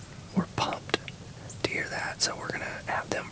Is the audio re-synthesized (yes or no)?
no